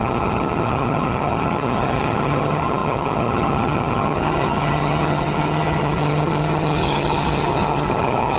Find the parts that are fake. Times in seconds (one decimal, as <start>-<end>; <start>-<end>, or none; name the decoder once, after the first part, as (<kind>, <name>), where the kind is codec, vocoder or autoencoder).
0.0-8.4 (vocoder, HiFi-GAN)